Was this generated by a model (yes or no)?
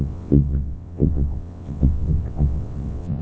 yes